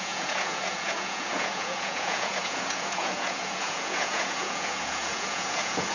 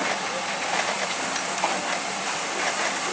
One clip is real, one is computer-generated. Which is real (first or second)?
second